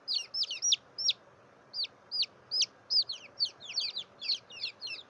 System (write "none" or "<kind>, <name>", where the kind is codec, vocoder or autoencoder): none